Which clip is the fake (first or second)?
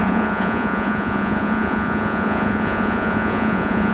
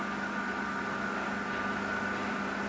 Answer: first